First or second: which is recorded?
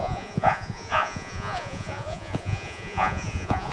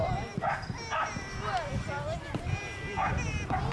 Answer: second